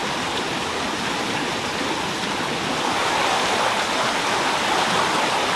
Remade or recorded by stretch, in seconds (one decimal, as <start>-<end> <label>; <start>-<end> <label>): 0.0-5.6 recorded